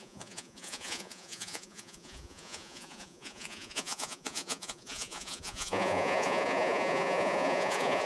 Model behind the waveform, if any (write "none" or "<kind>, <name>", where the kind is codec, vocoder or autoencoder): vocoder, Vocos